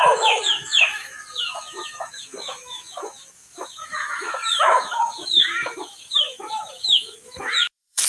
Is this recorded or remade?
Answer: remade